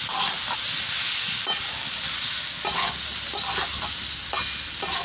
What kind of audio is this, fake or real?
real